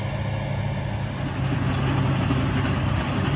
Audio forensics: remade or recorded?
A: recorded